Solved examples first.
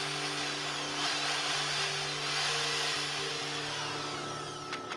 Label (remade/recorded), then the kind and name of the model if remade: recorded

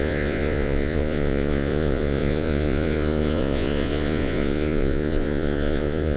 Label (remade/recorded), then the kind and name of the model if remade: remade, vocoder, Vocos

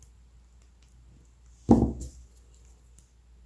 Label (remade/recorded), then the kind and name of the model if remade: recorded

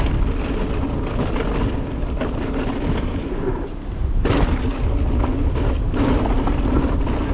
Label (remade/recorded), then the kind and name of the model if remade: recorded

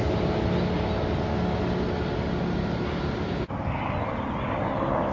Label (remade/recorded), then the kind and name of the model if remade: recorded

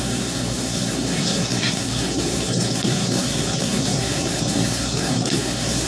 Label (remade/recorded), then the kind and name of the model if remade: remade, codec, SNAC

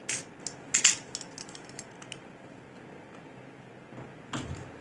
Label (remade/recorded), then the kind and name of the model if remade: recorded